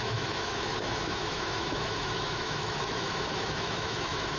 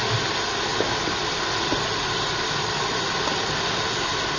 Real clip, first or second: second